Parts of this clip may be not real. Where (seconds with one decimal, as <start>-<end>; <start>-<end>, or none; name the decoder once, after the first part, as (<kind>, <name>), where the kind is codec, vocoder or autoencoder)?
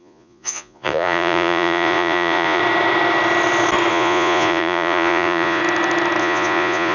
0.0-2.6 (vocoder, Vocos); 3.9-5.6; 6.2-6.9